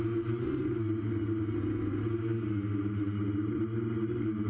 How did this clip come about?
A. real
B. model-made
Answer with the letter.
A